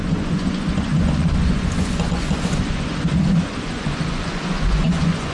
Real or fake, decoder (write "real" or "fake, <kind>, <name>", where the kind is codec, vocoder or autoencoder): fake, vocoder, Vocos